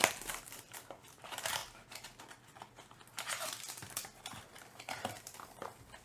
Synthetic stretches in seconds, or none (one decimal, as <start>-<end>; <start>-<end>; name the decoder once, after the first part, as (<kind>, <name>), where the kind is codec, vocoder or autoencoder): 0.0-1.6 (vocoder, BigVGAN v2); 5.2-6.0

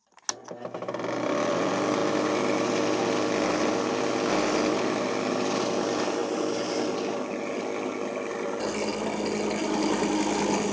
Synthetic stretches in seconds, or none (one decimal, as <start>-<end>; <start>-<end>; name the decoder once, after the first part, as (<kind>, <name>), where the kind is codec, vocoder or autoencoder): none